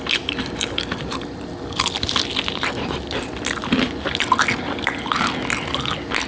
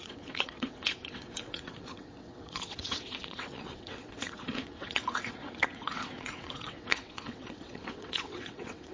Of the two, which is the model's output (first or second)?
second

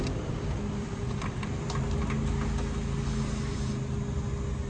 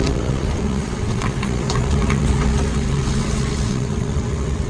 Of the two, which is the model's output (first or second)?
second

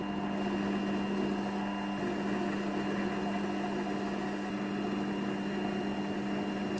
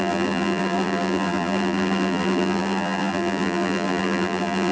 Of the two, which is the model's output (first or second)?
second